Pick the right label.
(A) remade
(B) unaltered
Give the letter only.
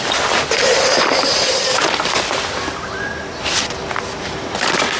B